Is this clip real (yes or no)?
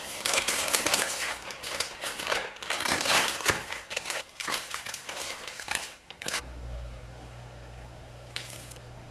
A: no